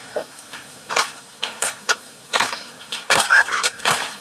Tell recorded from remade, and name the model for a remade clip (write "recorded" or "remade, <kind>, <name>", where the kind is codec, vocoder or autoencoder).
remade, codec, SNAC